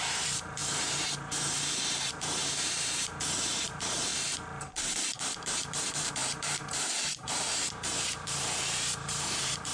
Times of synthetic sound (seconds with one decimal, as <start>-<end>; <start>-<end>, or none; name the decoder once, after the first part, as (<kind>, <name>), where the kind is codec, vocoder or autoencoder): 0.0-4.1 (vocoder, BigVGAN v2); 4.7-9.7